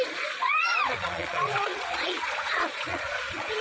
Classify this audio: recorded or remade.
remade